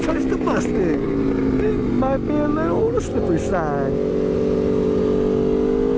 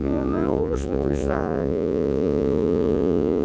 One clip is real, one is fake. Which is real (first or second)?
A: first